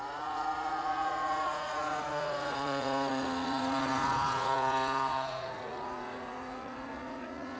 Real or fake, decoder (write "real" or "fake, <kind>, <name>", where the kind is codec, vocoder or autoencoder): fake, vocoder, Vocos